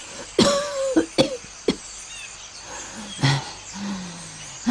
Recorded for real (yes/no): yes